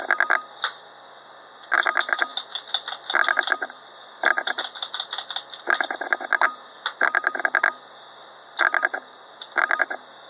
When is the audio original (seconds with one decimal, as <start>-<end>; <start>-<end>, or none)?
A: 0.0-10.3